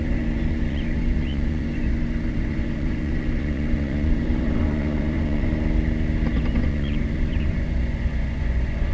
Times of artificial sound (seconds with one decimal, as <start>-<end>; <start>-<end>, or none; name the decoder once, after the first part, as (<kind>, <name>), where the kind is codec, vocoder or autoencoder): 0.0-5.5 (vocoder, Vocos); 6.3-8.9